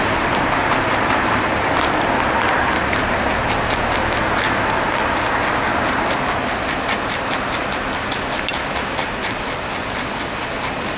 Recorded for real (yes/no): yes